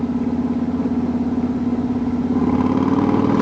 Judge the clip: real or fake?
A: real